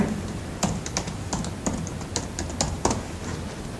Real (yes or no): yes